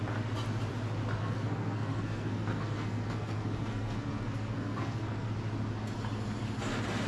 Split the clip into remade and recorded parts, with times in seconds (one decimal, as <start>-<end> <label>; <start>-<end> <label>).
0.0-1.2 recorded; 1.2-5.3 remade; 5.3-7.1 recorded